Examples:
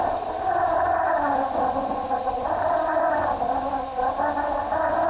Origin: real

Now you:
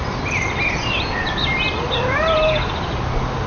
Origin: real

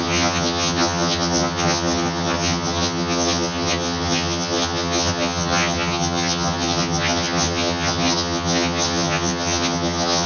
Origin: fake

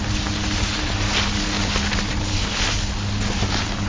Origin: real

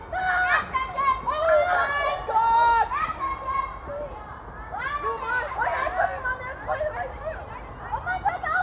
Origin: real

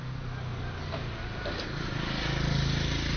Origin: real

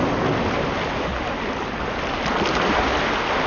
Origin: real